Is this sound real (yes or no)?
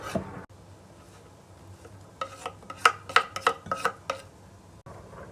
yes